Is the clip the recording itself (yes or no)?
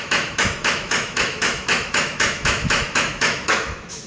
no